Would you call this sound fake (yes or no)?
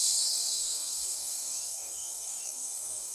yes